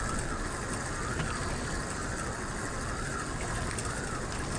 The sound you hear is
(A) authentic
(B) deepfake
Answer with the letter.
A